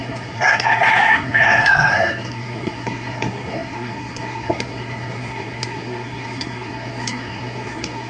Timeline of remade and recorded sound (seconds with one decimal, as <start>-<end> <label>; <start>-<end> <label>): 0.0-8.1 remade